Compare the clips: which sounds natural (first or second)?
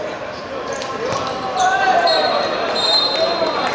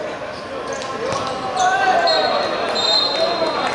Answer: second